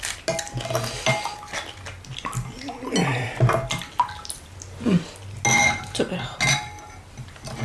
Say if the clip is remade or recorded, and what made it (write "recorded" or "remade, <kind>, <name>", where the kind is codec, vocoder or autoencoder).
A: recorded